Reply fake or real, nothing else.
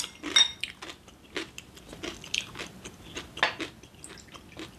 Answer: real